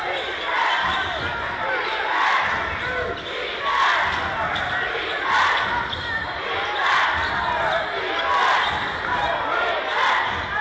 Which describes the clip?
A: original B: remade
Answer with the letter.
A